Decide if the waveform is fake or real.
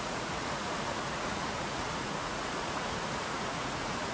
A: fake